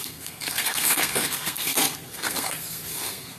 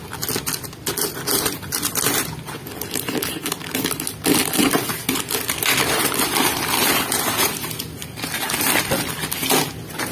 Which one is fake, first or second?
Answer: first